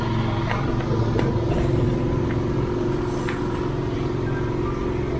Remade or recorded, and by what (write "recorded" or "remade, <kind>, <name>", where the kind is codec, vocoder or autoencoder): recorded